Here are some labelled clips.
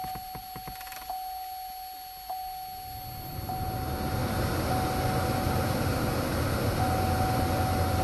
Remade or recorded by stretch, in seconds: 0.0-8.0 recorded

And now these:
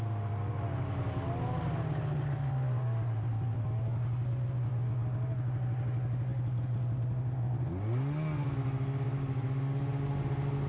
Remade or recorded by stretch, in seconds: 0.0-10.7 recorded

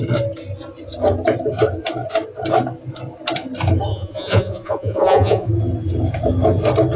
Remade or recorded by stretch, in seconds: 0.0-3.9 recorded; 3.9-5.5 remade; 5.5-7.0 recorded

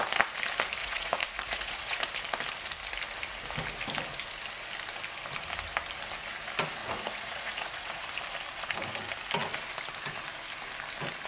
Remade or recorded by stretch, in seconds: 0.0-0.8 recorded; 0.8-2.0 remade; 2.0-6.8 recorded; 6.8-8.0 remade; 8.0-11.3 recorded